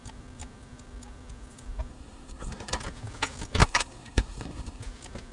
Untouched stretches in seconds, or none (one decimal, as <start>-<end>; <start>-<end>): 0.0-1.9; 2.8-3.6; 4.8-5.3